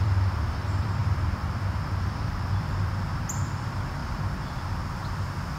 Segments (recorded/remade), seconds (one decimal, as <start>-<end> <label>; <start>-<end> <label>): 0.0-5.6 remade